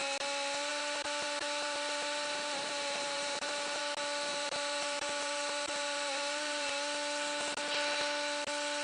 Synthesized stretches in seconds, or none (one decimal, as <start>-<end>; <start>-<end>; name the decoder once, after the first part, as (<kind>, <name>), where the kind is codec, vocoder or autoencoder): 0.7-3.8 (vocoder, BigVGAN v2); 4.3-6.7